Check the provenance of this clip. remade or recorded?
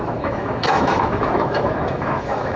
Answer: remade